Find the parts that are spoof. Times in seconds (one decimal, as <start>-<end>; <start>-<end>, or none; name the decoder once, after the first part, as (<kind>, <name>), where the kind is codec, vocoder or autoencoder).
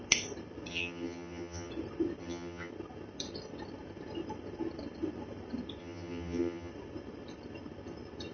0.7-1.7 (vocoder, HiFi-GAN); 2.2-2.7; 5.8-6.7